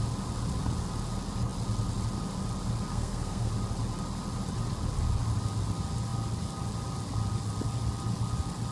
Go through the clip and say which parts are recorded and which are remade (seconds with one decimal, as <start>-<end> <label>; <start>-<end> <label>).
0.0-2.9 recorded; 2.9-3.5 remade; 3.5-8.7 recorded